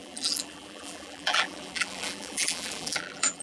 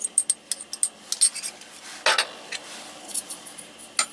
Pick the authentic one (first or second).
second